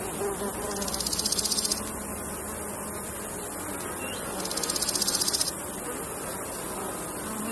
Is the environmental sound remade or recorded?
recorded